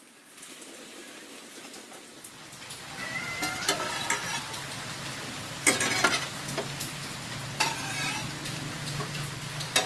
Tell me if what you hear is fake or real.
real